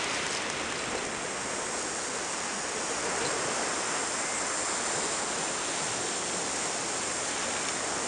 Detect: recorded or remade recorded